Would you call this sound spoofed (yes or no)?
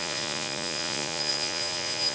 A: yes